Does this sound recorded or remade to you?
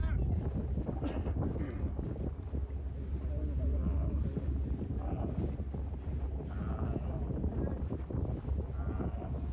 recorded